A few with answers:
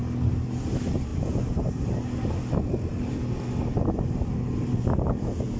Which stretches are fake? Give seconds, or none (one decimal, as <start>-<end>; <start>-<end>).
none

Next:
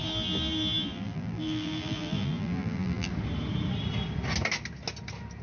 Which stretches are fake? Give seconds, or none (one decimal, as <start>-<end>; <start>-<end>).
0.0-3.1

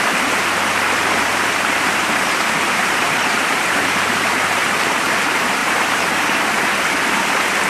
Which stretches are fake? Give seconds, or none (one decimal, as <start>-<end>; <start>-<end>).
1.3-3.8; 5.6-6.4